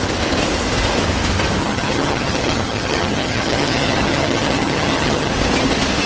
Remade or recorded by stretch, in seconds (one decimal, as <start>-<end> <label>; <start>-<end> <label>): 0.0-1.6 recorded; 1.6-5.3 remade; 5.3-6.1 recorded